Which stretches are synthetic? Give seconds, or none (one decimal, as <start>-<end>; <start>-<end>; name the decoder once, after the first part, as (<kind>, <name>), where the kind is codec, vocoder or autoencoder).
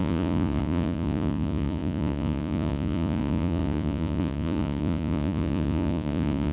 0.0-6.5 (vocoder, Vocos)